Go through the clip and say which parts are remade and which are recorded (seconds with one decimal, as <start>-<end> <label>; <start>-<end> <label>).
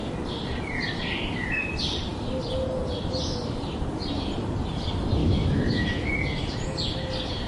0.0-5.2 recorded; 5.2-6.1 remade; 6.1-7.5 recorded